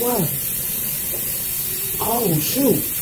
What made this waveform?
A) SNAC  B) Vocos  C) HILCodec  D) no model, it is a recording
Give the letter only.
D